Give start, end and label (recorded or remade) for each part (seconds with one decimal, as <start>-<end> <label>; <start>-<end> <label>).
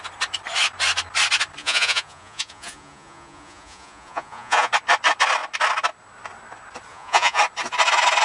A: 0.0-1.6 recorded; 1.6-4.7 remade; 4.7-6.9 recorded; 6.9-7.4 remade; 7.4-8.2 recorded